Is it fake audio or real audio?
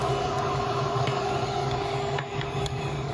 fake